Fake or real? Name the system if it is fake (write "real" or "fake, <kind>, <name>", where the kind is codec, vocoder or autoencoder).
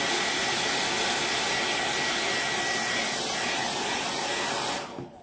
real